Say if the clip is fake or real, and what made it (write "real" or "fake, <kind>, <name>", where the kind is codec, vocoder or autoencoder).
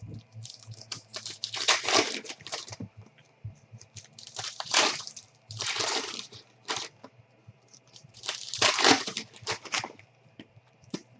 fake, vocoder, BigVGAN v2